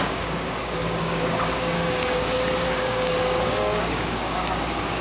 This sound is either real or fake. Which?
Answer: fake